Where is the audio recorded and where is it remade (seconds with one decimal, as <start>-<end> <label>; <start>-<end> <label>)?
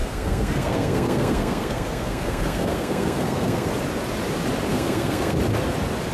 0.0-3.7 remade; 3.7-4.7 recorded; 4.7-5.4 remade; 5.4-6.1 recorded